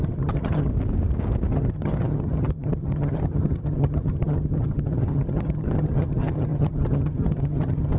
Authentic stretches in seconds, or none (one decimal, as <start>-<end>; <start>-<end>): 0.7-1.5